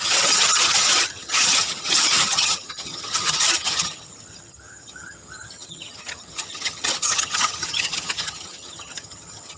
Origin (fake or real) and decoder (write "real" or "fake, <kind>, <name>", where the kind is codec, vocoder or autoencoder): fake, vocoder, HiFi-GAN